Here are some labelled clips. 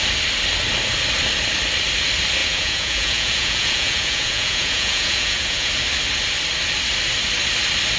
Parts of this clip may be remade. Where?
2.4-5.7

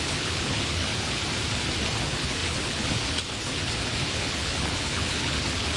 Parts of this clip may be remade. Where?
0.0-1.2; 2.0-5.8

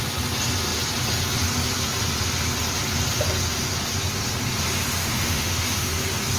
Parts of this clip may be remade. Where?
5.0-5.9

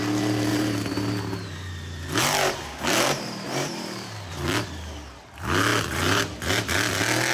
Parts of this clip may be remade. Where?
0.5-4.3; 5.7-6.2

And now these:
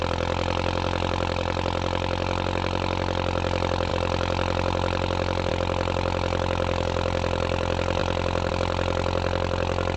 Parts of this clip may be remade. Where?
none

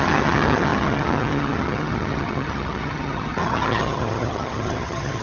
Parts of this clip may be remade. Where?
0.0-5.2